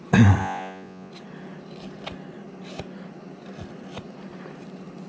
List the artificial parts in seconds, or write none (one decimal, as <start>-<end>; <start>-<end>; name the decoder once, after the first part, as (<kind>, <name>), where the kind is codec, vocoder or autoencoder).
0.4-1.1 (vocoder, Vocos)